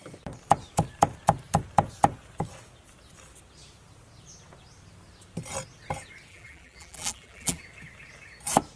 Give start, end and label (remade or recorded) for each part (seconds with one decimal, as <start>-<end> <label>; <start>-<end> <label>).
0.0-6.3 recorded; 6.3-7.6 remade; 7.6-8.8 recorded

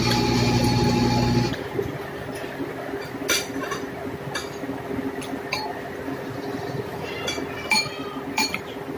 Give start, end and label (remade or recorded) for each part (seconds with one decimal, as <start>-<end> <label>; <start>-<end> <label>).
0.0-9.0 recorded

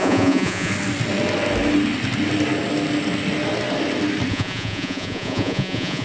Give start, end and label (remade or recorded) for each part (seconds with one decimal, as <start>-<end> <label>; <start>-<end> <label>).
0.0-0.7 remade; 0.7-4.3 recorded; 4.3-6.0 remade

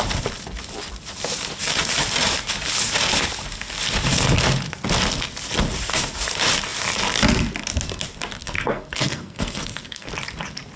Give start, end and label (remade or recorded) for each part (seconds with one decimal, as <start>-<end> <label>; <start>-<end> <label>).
0.0-8.4 recorded; 8.4-10.1 remade; 10.1-10.8 recorded

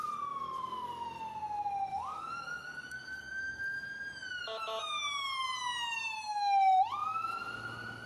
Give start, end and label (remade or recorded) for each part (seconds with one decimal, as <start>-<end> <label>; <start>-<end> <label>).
0.0-1.9 recorded; 1.9-3.6 remade; 3.6-8.1 recorded

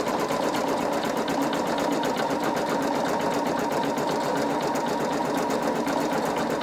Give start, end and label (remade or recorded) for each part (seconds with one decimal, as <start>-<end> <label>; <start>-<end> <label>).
0.0-2.4 remade; 2.4-3.5 recorded; 3.5-4.3 remade; 4.3-5.0 recorded; 5.0-6.6 remade

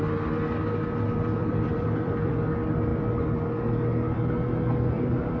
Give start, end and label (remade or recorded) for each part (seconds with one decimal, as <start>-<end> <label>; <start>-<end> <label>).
0.0-1.4 recorded; 1.4-2.3 remade; 2.3-5.4 recorded

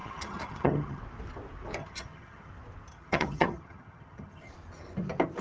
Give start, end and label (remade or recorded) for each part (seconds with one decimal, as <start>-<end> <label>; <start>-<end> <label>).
0.0-1.0 remade; 1.0-1.8 recorded; 1.8-2.5 remade; 2.5-2.9 recorded; 2.9-4.5 remade; 4.5-5.4 recorded